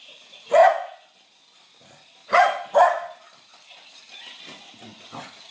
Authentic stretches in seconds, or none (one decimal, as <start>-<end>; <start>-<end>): 0.6-3.9